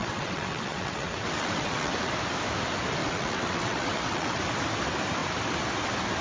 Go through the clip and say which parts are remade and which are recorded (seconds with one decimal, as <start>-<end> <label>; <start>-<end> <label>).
0.0-2.1 remade; 2.1-3.0 recorded; 3.0-4.4 remade; 4.4-6.2 recorded